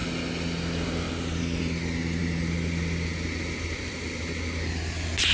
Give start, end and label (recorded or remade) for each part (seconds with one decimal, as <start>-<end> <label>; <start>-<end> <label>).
0.0-5.3 recorded